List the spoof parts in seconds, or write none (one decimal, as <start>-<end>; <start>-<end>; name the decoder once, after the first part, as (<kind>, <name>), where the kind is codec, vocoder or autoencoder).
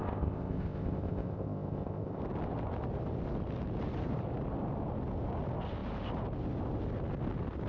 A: 0.0-2.2 (codec, ZipCodec)